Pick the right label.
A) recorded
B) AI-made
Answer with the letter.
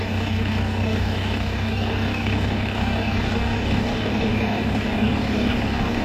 B